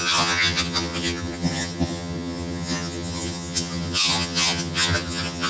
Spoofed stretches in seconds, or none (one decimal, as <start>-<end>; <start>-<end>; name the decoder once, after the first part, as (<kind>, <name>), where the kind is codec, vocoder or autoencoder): 0.0-5.5 (vocoder, HiFi-GAN)